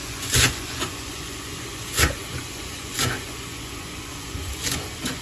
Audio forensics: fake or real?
fake